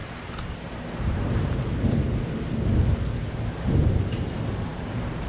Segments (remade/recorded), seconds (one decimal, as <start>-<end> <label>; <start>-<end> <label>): 0.0-2.0 remade; 2.0-4.7 recorded; 4.7-5.3 remade